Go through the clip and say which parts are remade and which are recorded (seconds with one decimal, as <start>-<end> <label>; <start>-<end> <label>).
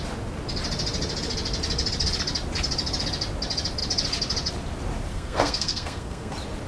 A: 0.0-5.1 recorded; 5.1-6.3 remade; 6.3-6.7 recorded